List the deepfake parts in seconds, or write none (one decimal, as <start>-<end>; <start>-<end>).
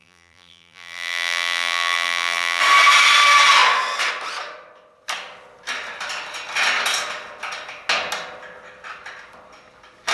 0.0-2.6